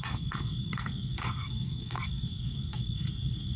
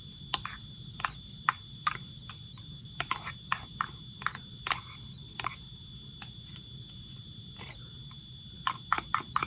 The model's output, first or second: first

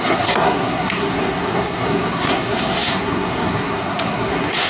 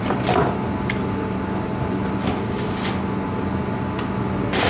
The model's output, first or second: first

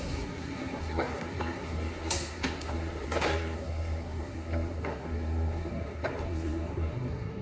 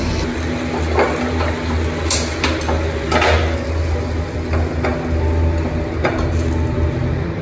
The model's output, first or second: first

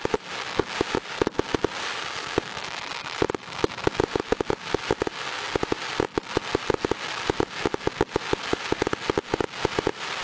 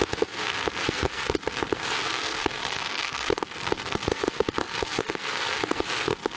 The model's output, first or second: second